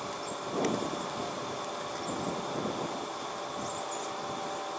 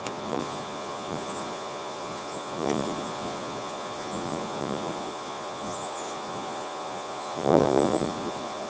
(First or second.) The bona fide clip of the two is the first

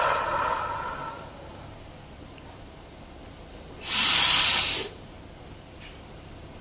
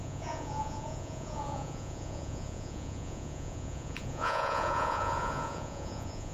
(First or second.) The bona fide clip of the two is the first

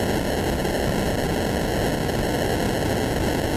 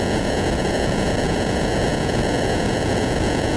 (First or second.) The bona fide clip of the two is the first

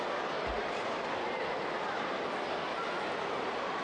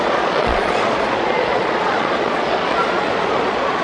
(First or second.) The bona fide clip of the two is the first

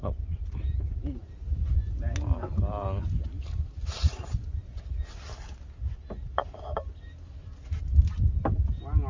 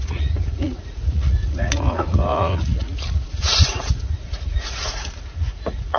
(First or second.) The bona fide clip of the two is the first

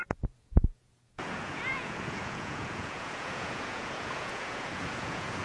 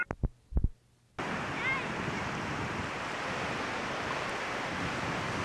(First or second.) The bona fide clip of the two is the second